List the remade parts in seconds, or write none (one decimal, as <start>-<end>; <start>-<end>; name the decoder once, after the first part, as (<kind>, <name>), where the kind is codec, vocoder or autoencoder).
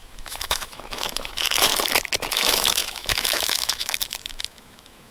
0.0-1.7 (autoencoder, DAC-VAE); 2.3-5.1